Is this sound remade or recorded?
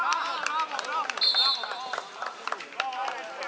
recorded